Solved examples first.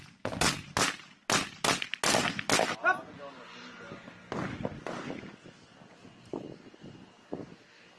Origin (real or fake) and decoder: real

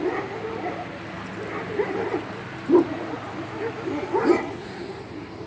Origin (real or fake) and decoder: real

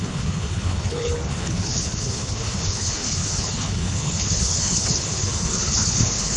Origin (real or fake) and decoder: fake, codec, HILCodec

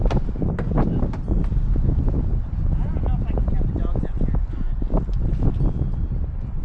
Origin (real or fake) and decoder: real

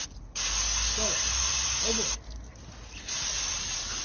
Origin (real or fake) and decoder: real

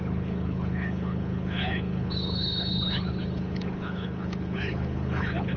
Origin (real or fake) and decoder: fake, codec, HILCodec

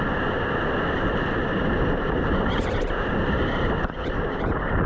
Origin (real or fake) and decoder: real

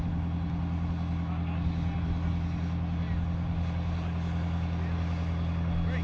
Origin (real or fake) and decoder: real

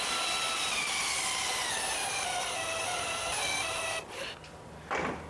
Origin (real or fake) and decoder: real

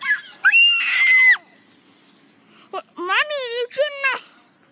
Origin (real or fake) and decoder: real